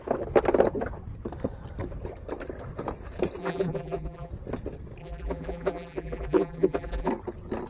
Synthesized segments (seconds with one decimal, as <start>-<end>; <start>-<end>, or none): 3.4-4.3; 5.0-7.1